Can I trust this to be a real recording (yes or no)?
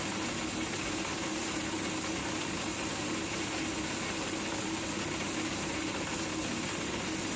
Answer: yes